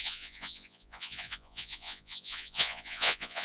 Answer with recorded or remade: remade